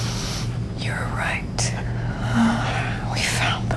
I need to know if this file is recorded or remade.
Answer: recorded